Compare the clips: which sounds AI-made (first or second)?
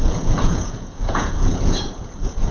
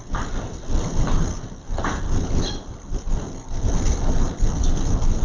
first